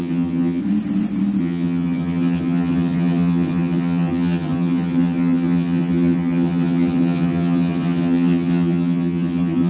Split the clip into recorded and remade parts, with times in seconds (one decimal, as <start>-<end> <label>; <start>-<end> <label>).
0.0-0.6 remade; 0.6-1.4 recorded; 1.4-9.7 remade